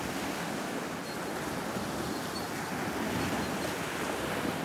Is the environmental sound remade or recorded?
recorded